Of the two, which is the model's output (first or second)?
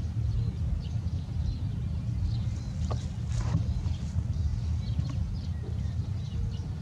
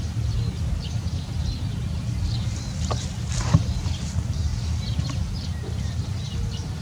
second